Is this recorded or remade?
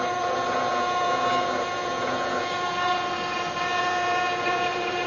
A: remade